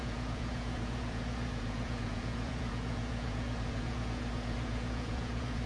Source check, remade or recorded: remade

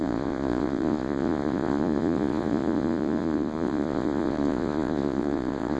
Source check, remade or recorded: remade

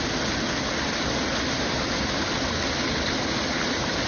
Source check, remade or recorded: recorded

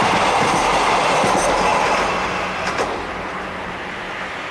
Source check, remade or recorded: recorded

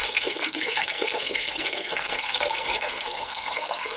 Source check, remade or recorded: remade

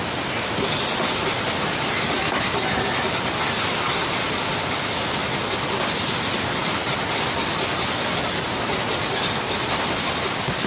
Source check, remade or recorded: recorded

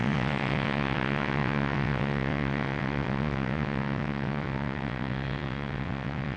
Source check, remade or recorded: remade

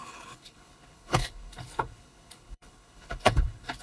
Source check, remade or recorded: remade